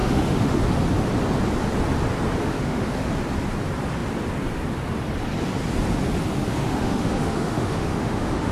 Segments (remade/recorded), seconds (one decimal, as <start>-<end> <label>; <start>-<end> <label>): 0.0-0.6 remade; 0.6-2.4 recorded; 2.4-3.1 remade; 3.1-6.5 recorded; 6.5-8.5 remade